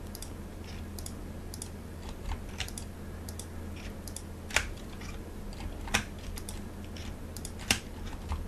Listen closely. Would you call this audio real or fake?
real